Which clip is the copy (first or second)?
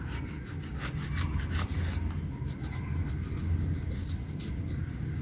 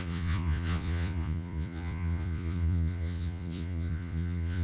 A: second